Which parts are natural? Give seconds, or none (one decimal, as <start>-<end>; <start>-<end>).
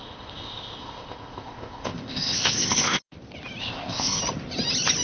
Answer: 3.0-3.6; 4.2-5.0